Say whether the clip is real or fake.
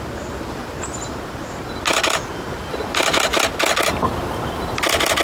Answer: real